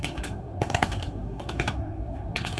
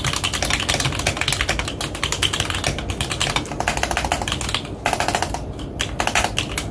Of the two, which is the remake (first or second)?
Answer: first